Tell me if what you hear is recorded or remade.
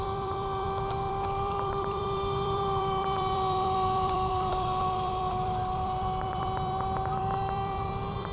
remade